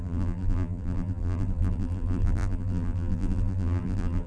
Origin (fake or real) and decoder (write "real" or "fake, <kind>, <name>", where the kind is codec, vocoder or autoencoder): fake, vocoder, BigVGAN v2